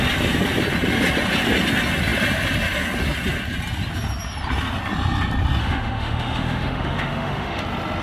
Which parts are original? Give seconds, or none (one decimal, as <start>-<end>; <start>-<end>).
0.0-5.6; 7.6-8.0